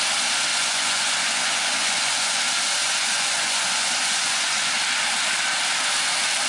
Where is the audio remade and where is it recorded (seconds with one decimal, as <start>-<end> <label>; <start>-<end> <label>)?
0.0-0.5 recorded; 0.5-2.4 remade; 2.4-2.8 recorded; 2.8-4.7 remade; 4.7-6.5 recorded